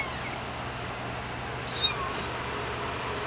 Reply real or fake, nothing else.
real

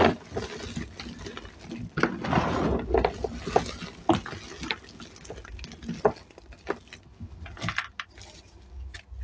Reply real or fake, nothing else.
real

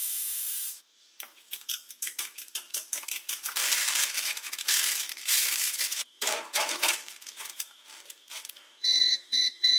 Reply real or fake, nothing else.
fake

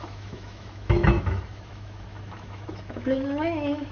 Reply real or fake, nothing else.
fake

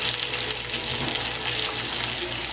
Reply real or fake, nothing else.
real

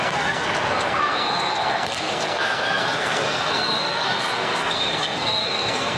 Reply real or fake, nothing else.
fake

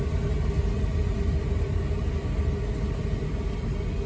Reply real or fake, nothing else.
real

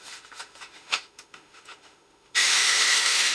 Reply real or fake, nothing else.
fake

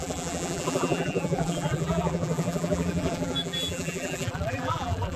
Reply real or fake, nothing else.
fake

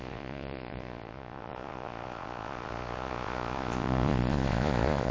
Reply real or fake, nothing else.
fake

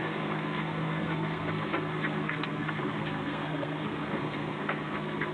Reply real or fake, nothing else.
fake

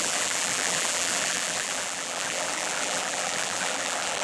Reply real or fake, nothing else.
fake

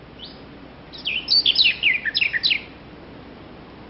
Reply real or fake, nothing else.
real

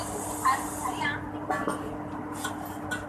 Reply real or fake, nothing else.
real